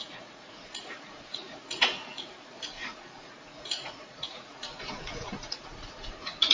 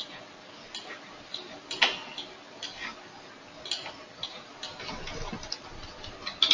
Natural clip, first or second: second